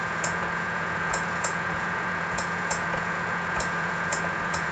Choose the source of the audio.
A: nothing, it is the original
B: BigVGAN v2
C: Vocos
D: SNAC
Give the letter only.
C